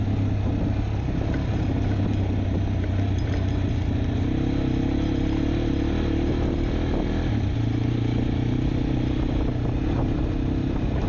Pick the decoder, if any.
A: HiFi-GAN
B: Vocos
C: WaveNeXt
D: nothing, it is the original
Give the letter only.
D